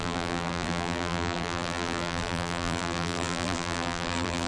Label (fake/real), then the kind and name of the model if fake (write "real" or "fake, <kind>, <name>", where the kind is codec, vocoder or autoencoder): fake, vocoder, BigVGAN v2